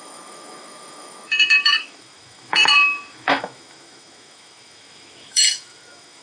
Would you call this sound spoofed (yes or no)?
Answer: yes